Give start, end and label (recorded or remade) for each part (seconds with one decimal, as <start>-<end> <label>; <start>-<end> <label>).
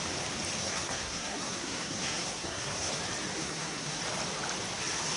0.0-0.6 recorded; 0.6-3.0 remade; 3.0-3.4 recorded; 3.4-4.0 remade; 4.0-5.2 recorded